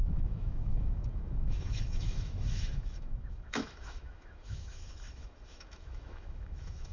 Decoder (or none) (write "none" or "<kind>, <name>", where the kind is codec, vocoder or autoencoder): autoencoder, DAC-VAE